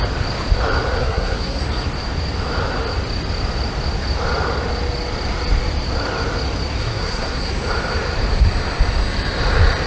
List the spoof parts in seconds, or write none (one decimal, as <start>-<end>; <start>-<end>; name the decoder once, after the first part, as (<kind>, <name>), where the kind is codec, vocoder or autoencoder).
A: 1.0-1.6 (codec, SNAC); 6.8-7.5